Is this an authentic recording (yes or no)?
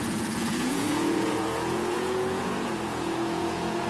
no